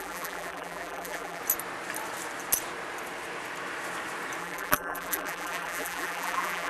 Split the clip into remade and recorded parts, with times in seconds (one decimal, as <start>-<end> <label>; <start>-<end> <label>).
0.0-1.4 remade; 1.4-4.4 recorded; 4.4-6.7 remade